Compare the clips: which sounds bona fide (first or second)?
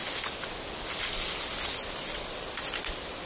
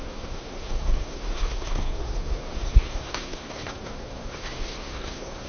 first